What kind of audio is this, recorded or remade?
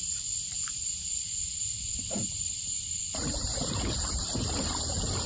remade